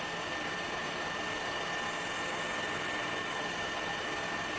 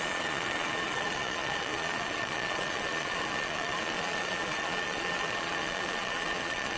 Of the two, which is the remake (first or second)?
second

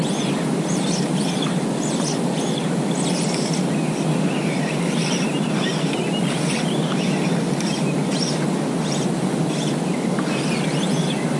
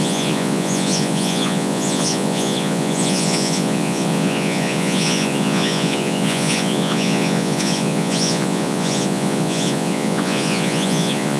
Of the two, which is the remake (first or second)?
second